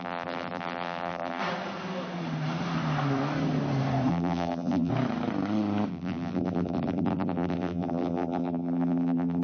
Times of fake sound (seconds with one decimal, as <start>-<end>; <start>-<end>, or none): 0.0-1.4; 4.1-4.9; 5.9-9.4